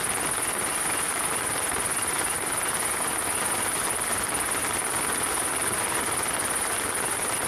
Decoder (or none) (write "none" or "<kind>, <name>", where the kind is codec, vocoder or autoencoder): none